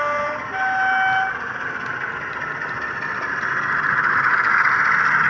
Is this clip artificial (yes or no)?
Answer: no